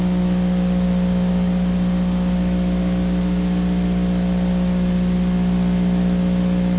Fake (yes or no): no